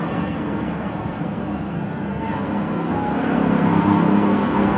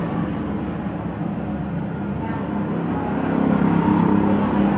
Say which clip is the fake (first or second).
first